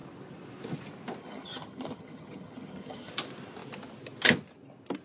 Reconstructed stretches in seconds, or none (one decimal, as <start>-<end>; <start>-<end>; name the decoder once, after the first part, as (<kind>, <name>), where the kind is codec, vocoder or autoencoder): 1.2-3.1 (vocoder, HiFi-GAN)